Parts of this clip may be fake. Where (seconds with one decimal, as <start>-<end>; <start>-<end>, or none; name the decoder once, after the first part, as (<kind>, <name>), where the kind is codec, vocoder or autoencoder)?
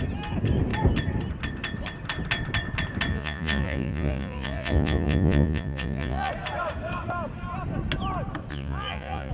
3.1-6.3 (vocoder, Vocos); 8.5-9.3